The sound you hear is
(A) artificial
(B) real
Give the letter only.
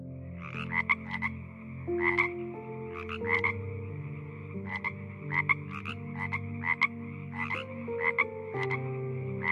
B